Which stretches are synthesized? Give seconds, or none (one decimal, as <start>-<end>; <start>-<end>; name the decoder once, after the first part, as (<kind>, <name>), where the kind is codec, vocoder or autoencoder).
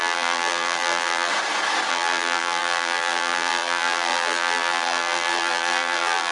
0.0-1.3 (vocoder, BigVGAN v2); 1.9-6.3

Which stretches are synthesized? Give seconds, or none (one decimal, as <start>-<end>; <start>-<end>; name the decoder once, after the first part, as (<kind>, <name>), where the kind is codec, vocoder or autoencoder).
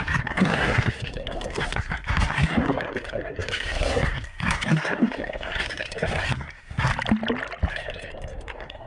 0.0-6.9 (codec, SNAC); 7.7-8.9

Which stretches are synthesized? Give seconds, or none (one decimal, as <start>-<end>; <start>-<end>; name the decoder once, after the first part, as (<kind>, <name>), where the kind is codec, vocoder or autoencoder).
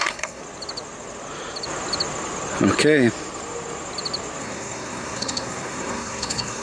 0.0-0.4 (codec, SNAC); 4.4-6.6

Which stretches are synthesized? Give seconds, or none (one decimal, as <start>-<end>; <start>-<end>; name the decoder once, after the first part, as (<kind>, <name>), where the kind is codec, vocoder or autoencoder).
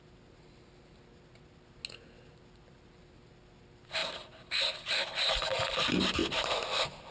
none